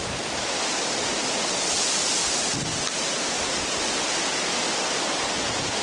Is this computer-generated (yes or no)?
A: no